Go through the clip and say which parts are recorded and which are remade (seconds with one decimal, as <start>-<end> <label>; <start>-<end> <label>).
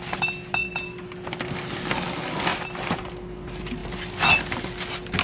0.0-2.5 recorded; 2.5-3.1 remade; 3.1-5.2 recorded